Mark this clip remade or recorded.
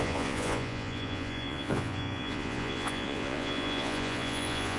remade